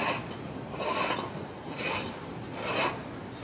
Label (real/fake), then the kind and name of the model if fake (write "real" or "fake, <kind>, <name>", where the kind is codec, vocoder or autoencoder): real